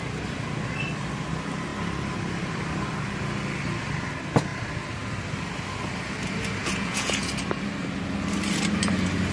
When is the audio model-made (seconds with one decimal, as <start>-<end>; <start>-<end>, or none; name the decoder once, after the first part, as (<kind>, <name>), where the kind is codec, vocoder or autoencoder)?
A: 6.6-7.3 (vocoder, Vocos)